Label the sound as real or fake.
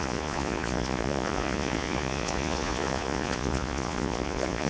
fake